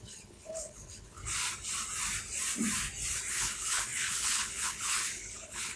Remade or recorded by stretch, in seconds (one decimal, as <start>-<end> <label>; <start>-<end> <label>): 0.0-1.2 remade; 1.2-3.3 recorded; 3.3-5.8 remade